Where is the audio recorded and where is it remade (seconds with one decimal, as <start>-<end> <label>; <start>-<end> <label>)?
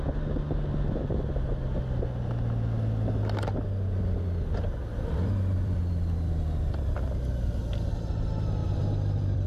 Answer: 0.0-4.9 recorded; 4.9-5.8 remade; 5.8-8.6 recorded; 8.6-9.5 remade